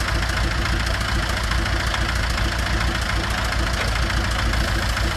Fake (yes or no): no